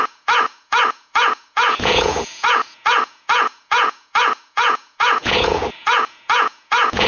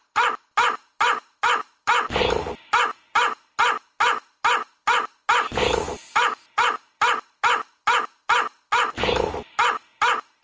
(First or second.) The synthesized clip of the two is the first